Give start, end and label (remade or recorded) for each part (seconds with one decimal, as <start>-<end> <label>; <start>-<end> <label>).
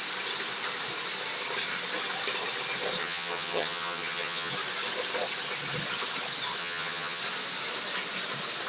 0.0-3.0 recorded; 3.0-4.5 remade; 4.5-6.6 recorded; 6.6-7.2 remade; 7.2-8.7 recorded